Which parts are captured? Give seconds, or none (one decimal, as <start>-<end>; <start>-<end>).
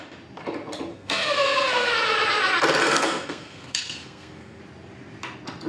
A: 0.0-0.9; 1.9-2.8; 4.6-5.7